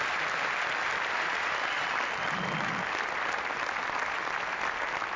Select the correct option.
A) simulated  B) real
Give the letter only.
B